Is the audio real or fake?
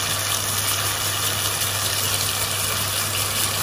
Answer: real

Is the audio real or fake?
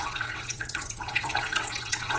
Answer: fake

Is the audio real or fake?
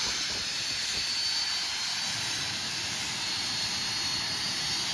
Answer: real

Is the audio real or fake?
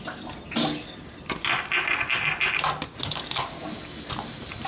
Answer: real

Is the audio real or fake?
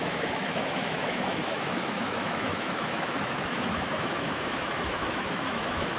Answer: fake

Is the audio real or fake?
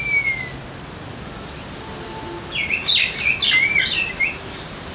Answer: real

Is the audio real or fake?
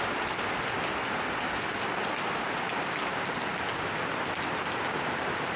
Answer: real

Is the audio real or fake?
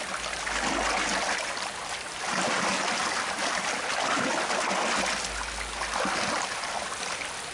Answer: real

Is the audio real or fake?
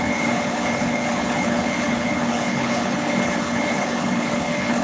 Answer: fake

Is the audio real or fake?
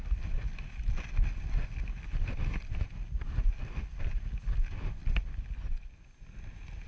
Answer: real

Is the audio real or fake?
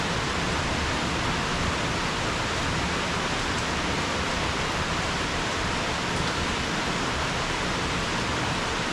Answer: real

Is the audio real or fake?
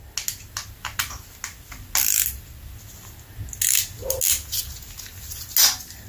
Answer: real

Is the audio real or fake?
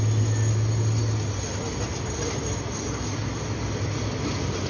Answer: real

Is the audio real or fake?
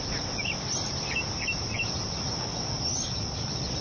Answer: real